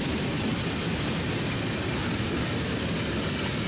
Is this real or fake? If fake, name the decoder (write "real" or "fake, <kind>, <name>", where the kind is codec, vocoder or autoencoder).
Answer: real